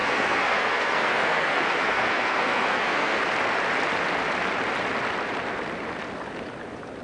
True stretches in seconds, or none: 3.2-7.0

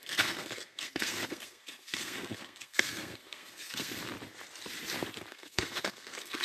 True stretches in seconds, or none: 4.0-5.3

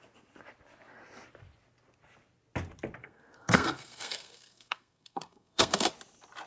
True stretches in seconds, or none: 0.0-3.0; 5.9-6.5

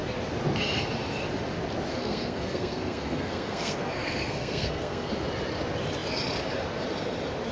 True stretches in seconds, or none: 0.0-1.9; 5.1-7.5

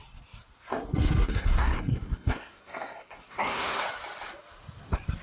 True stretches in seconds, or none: 0.0-0.7; 3.8-5.2